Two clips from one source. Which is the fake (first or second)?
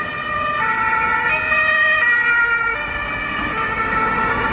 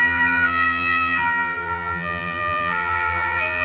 second